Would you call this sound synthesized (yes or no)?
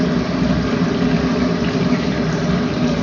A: no